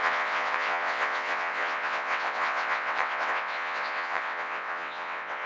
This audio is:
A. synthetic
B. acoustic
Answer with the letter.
A